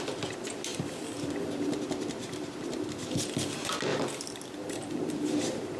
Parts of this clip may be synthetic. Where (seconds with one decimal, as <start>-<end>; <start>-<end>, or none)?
0.7-3.3; 3.9-5.3